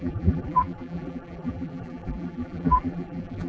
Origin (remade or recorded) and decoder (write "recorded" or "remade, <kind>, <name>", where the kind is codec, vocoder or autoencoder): remade, vocoder, BigVGAN v2